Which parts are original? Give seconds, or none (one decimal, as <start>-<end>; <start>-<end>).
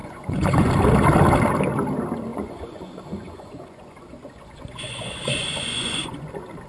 0.7-2.3; 6.3-6.7